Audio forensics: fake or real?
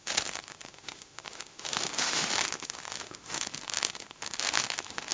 fake